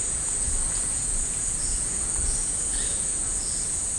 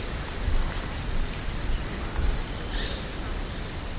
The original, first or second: second